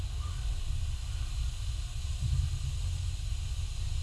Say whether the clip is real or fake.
real